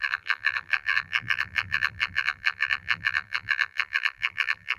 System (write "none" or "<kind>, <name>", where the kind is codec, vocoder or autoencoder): vocoder, BigVGAN v2